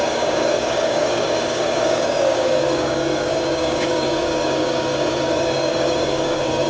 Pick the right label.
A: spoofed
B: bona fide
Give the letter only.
A